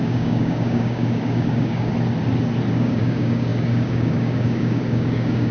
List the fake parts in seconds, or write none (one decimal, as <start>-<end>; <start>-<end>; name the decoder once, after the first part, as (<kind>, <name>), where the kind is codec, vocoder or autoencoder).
0.0-1.9 (codec, DAC); 2.7-5.5